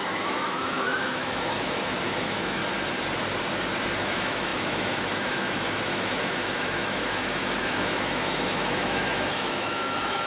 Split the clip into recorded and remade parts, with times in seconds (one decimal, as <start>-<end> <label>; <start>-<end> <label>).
0.0-2.6 remade; 2.6-4.0 recorded; 4.0-10.3 remade